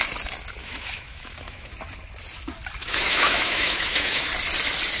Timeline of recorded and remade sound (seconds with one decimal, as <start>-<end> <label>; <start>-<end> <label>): 0.0-0.6 recorded; 0.6-1.7 remade; 1.7-2.8 recorded; 2.8-4.3 remade; 4.3-5.0 recorded